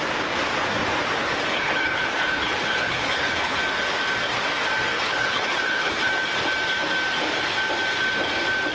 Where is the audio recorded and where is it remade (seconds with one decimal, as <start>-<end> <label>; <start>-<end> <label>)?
0.0-1.2 recorded; 1.2-3.6 remade; 3.6-4.9 recorded; 4.9-6.1 remade; 6.1-8.7 recorded